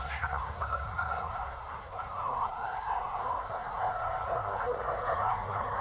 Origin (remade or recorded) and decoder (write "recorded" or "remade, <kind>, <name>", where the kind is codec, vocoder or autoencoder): remade, codec, SNAC